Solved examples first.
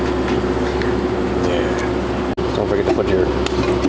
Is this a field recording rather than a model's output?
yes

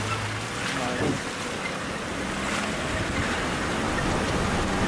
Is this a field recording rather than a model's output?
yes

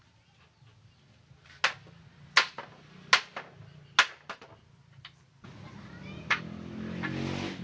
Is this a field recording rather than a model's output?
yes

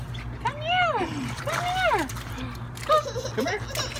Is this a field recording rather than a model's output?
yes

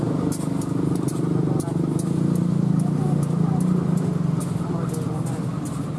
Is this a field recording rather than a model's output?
yes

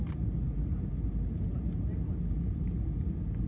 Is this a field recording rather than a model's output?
yes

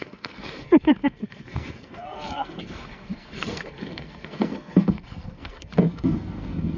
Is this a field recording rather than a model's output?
no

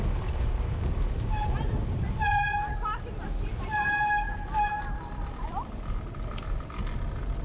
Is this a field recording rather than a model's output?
yes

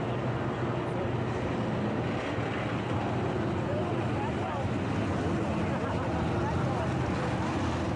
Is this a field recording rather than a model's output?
yes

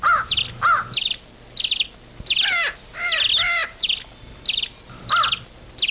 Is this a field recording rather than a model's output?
yes